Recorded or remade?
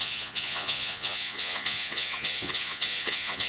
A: remade